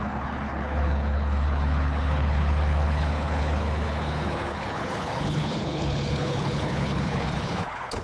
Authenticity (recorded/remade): remade